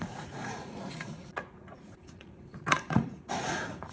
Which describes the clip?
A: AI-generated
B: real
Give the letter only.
A